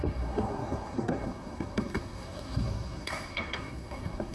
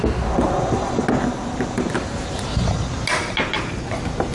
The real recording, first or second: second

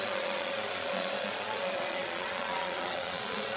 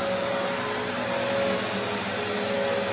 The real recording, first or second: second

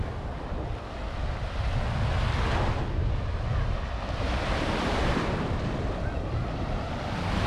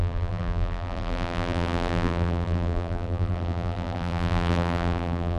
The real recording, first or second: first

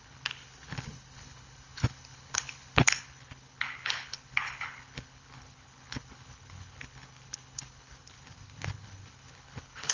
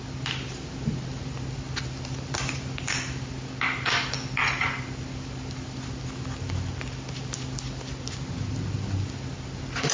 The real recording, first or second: second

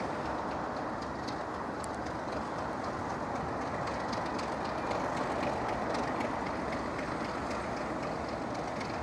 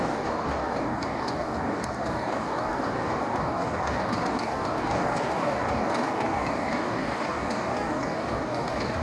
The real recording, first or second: first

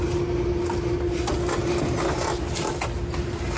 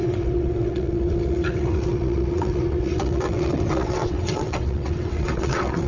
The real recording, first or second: first